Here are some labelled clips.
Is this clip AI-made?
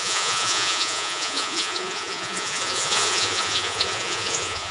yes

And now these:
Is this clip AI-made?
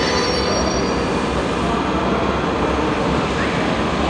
no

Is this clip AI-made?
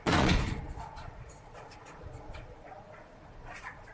yes